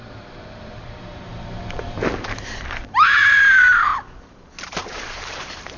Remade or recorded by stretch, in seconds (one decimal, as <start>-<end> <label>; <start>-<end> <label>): 0.0-3.9 remade; 3.9-4.9 recorded; 4.9-5.8 remade